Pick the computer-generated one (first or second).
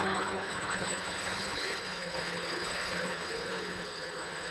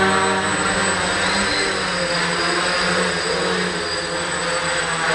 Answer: first